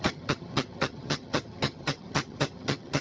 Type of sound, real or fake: fake